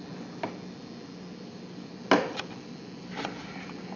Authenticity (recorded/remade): recorded